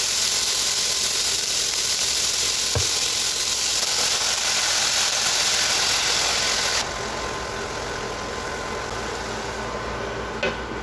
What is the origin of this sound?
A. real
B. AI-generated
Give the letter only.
A